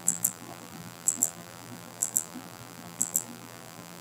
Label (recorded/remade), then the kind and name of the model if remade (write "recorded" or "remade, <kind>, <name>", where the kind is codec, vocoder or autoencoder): remade, vocoder, BigVGAN v2